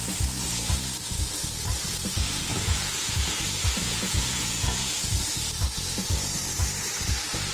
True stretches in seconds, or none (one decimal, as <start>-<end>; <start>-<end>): 0.0-2.5; 3.4-3.8; 4.9-7.5